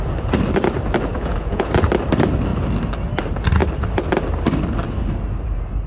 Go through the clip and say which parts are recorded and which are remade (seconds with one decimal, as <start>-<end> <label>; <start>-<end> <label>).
0.0-1.1 recorded; 1.1-1.7 remade; 1.7-5.9 recorded